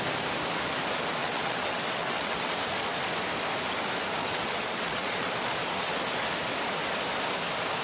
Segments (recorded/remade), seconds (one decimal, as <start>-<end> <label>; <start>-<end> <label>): 0.0-1.2 recorded; 1.2-2.5 remade; 2.5-4.2 recorded; 4.2-5.3 remade; 5.3-7.8 recorded